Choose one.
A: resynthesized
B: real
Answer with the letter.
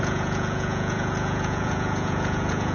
A